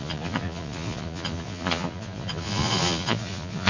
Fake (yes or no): yes